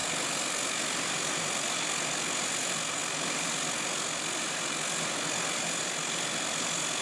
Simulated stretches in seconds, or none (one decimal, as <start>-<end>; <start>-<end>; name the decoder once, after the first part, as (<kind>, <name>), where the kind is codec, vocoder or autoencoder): none